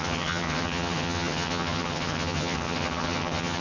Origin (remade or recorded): remade